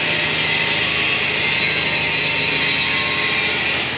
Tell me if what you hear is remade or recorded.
recorded